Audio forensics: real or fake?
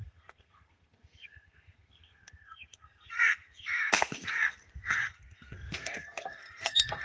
fake